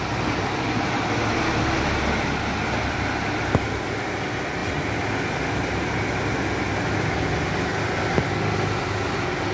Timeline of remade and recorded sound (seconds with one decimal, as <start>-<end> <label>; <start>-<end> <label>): 0.0-9.5 recorded